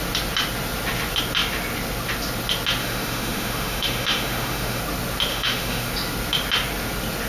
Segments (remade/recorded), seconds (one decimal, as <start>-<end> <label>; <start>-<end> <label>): 0.0-2.8 recorded; 2.8-4.8 remade; 4.8-5.3 recorded; 5.3-5.9 remade; 5.9-7.3 recorded